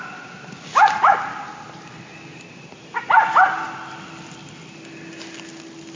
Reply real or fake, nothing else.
real